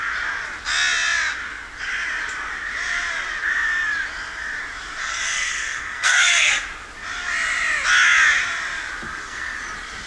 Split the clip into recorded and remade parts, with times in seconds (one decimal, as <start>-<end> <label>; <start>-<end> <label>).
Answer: 0.0-5.0 recorded; 5.0-6.5 remade; 6.5-9.1 recorded; 9.1-9.6 remade; 9.6-10.1 recorded